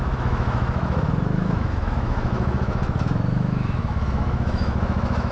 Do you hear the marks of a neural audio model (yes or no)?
yes